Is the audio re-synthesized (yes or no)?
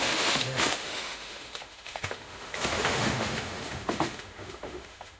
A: yes